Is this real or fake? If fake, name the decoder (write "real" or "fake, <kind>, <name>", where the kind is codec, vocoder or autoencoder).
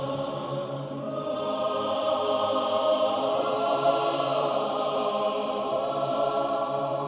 fake, vocoder, BigVGAN v2